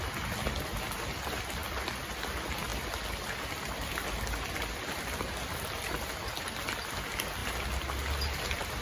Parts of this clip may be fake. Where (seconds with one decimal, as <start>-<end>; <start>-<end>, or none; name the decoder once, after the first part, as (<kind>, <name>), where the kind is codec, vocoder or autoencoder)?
none